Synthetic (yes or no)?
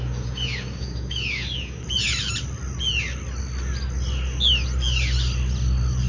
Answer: no